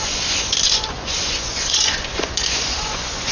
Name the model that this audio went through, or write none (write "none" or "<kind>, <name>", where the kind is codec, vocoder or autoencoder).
vocoder, Vocos